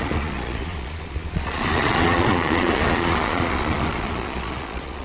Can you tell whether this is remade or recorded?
remade